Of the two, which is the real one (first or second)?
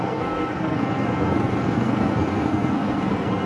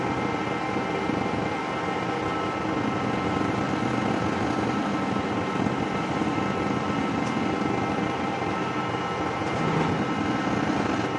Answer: second